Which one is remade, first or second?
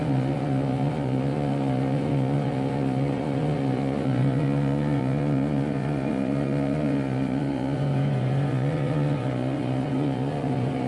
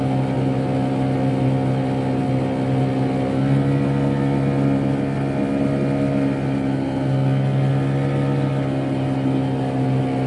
first